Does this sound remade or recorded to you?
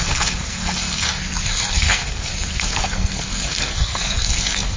remade